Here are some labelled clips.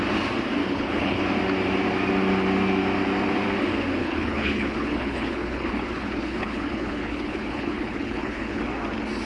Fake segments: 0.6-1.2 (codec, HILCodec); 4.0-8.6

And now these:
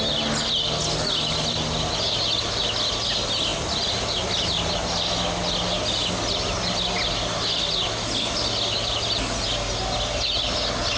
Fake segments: none